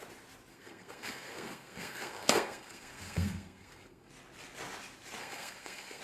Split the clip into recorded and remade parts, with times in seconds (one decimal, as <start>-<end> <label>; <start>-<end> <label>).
0.0-0.5 recorded; 0.5-4.1 remade; 4.1-5.2 recorded; 5.2-6.0 remade